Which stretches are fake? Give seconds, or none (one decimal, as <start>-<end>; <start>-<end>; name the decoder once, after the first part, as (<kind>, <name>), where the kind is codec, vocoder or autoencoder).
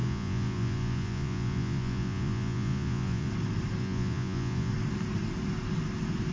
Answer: 0.0-3.3 (vocoder, Vocos); 3.8-4.7